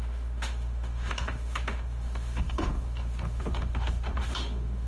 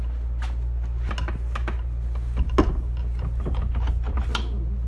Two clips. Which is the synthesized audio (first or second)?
first